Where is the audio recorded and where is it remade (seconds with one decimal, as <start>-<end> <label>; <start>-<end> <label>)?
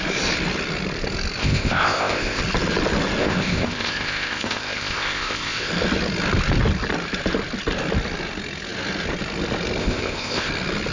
0.0-1.4 recorded; 1.4-2.4 remade; 2.4-3.2 recorded; 3.2-5.7 remade; 5.7-9.8 recorded; 9.8-10.5 remade; 10.5-10.9 recorded